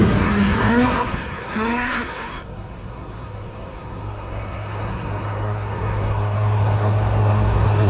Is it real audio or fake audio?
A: fake